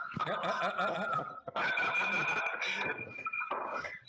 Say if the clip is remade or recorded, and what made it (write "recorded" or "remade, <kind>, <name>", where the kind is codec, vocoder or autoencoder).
recorded